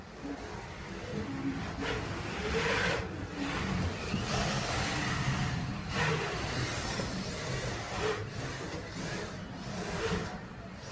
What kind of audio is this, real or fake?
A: real